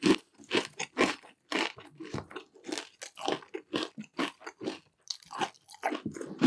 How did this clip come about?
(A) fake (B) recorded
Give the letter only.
B